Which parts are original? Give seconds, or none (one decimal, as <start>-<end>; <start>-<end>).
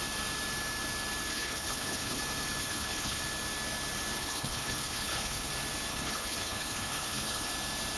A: 0.0-1.3; 2.2-2.6; 3.2-4.2; 5.5-5.9; 7.5-8.0